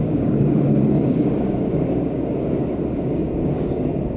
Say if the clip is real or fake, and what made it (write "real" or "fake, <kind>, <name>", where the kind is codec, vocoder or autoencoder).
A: fake, codec, DAC